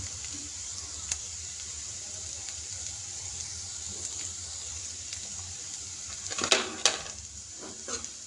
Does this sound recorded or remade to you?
remade